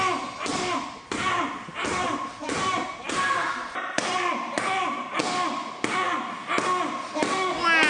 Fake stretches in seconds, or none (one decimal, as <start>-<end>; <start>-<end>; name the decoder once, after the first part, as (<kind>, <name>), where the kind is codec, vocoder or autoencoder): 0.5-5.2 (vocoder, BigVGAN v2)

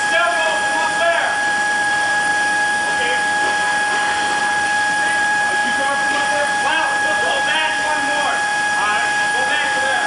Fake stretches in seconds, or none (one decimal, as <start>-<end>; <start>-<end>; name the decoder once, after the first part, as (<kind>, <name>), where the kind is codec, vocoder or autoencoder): 0.0-2.3 (vocoder, BigVGAN v2); 4.4-8.5

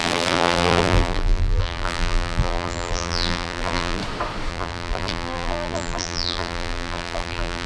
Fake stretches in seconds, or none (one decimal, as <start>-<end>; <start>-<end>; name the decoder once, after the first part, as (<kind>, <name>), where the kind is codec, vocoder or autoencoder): 0.0-4.0 (vocoder, BigVGAN v2); 4.5-7.7

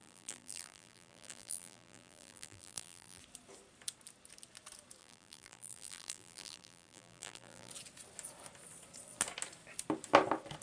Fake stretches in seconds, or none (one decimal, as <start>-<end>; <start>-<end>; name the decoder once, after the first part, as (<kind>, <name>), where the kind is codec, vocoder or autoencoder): 0.0-3.2 (vocoder, BigVGAN v2); 5.0-7.7

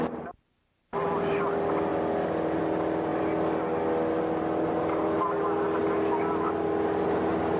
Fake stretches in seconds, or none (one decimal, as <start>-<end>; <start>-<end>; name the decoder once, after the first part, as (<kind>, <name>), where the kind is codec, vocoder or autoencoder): none